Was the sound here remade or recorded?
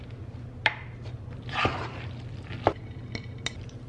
recorded